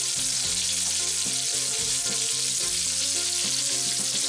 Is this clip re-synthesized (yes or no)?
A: no